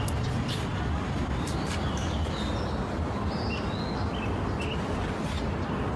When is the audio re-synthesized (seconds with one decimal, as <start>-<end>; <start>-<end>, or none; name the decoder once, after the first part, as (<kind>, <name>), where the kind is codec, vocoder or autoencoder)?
none